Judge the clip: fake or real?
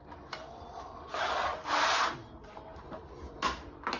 real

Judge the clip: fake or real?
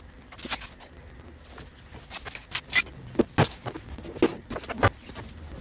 real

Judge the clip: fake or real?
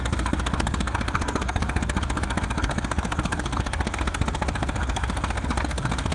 fake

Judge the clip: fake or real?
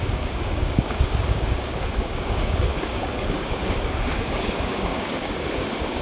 fake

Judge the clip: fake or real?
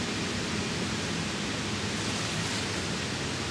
real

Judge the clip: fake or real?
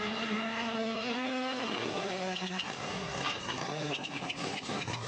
fake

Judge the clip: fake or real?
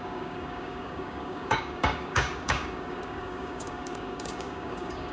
fake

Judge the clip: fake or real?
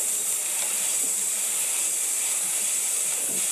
fake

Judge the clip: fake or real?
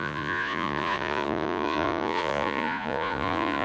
fake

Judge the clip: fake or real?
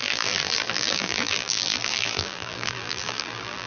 fake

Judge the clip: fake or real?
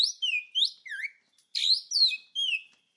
real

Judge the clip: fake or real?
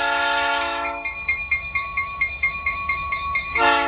fake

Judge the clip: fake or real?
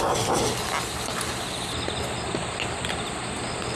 real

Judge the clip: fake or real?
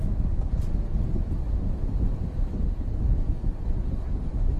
real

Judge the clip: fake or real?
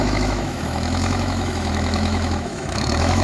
fake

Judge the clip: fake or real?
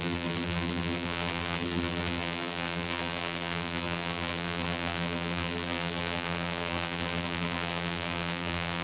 fake